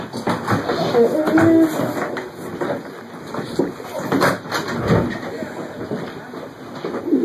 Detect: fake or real real